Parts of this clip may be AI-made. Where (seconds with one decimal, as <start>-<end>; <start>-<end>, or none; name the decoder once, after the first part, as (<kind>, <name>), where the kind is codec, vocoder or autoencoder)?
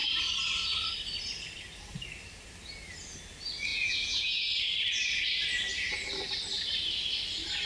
3.7-4.5 (vocoder, Vocos)